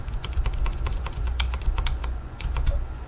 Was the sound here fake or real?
fake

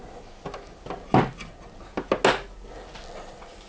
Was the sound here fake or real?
real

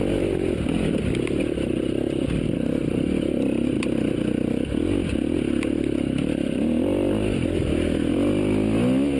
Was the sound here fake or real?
real